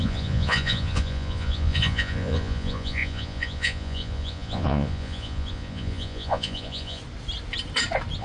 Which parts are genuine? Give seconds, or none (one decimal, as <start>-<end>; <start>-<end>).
7.0-8.2